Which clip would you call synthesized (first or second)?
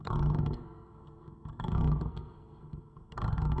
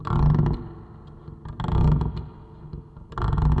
first